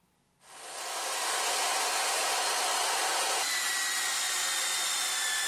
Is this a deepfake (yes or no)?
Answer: no